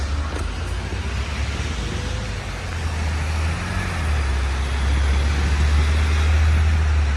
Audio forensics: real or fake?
real